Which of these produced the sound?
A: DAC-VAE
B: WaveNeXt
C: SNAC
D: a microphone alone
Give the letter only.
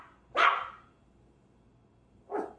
D